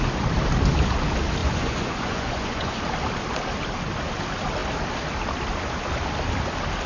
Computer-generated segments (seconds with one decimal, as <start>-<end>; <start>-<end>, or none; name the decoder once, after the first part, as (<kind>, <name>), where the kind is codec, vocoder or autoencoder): 1.4-2.8 (vocoder, Vocos)